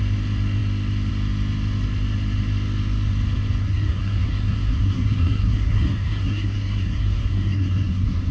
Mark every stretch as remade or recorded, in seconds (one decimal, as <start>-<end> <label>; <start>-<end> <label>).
0.0-3.6 recorded; 3.6-8.3 remade